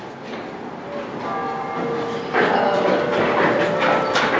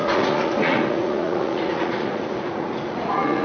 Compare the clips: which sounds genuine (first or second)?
first